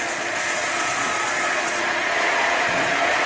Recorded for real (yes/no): no